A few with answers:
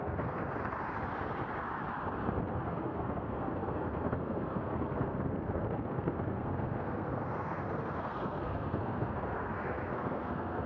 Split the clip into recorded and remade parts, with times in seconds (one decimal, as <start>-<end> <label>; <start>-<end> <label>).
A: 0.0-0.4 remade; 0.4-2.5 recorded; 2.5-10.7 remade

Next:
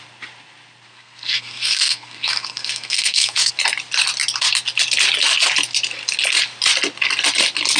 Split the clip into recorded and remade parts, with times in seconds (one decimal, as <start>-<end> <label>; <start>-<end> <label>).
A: 0.0-0.9 recorded; 0.9-3.5 remade; 3.5-7.8 recorded

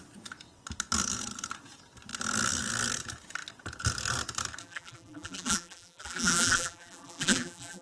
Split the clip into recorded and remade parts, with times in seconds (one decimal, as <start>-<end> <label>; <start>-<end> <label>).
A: 0.0-4.6 recorded; 4.6-7.8 remade

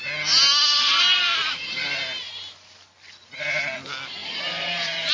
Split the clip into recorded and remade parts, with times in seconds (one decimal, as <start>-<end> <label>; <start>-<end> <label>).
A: 0.0-0.7 recorded; 0.7-2.3 remade; 2.3-4.2 recorded; 4.2-5.1 remade

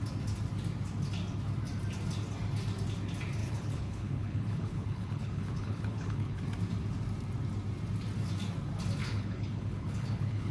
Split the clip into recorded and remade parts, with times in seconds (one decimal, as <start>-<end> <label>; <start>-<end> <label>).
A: 0.0-3.4 recorded; 3.4-6.4 remade; 6.4-9.0 recorded; 9.0-10.5 remade

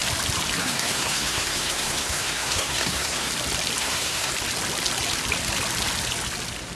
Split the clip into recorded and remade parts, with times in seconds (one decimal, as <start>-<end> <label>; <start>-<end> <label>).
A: 0.0-0.6 recorded; 0.6-3.3 remade; 3.3-3.8 recorded; 3.8-4.3 remade; 4.3-6.8 recorded